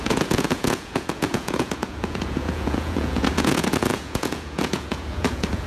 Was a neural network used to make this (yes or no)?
yes